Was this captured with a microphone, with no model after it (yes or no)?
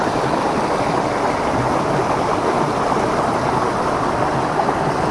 yes